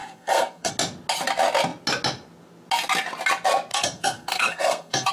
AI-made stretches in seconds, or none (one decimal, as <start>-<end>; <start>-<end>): 0.0-0.7; 3.7-5.1